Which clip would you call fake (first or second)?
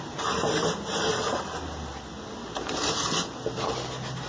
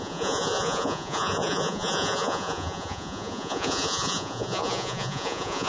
second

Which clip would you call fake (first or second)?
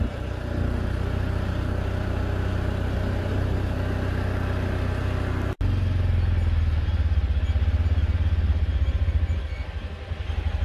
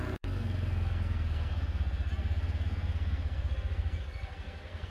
second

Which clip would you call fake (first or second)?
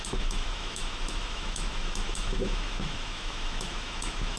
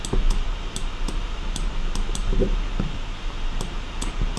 first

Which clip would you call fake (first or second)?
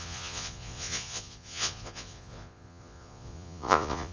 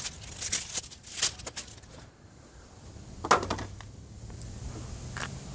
first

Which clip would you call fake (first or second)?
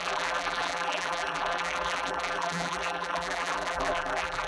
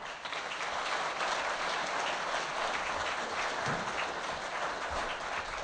first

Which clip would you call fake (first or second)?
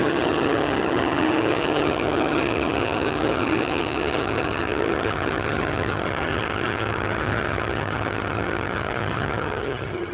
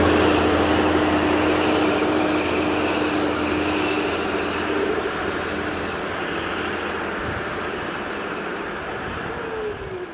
first